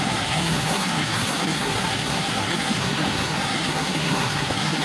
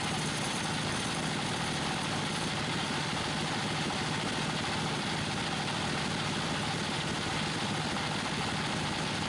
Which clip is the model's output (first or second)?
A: first